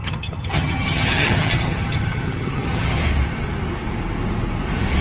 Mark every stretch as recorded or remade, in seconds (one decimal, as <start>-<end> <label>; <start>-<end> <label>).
0.0-3.0 remade; 3.0-5.0 recorded